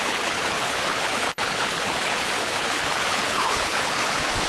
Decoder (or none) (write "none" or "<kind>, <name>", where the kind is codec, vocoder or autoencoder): codec, HILCodec